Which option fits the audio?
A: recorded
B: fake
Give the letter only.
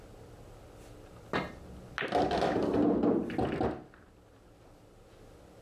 A